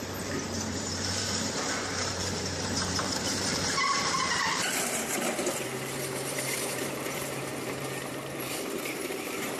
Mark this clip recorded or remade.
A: remade